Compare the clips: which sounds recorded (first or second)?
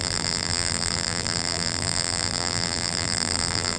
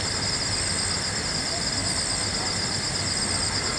second